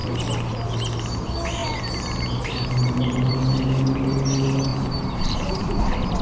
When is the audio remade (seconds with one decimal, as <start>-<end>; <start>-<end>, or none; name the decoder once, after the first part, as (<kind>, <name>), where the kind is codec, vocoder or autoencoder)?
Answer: 0.0-0.5 (vocoder, BigVGAN v2); 4.7-5.6